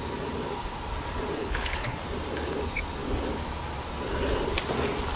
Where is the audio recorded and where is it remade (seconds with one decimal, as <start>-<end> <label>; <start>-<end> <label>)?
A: 0.0-1.4 recorded; 1.4-2.0 remade; 2.0-5.2 recorded